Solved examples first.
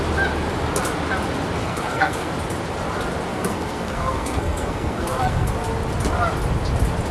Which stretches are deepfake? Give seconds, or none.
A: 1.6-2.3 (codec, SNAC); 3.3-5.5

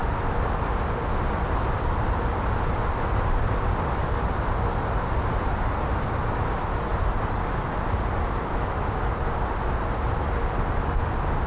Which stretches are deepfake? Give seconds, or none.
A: 8.5-9.1 (autoencoder, DAC-VAE)